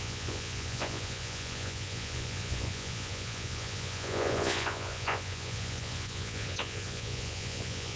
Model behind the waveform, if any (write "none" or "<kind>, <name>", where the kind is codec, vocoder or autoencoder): vocoder, Vocos